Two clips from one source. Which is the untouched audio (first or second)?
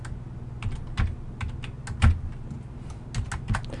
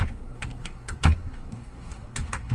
first